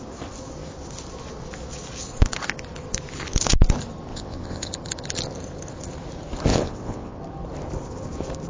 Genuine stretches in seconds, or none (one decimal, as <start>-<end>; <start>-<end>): 0.0-4.1; 4.7-6.5; 7.2-8.5